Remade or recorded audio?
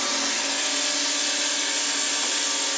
recorded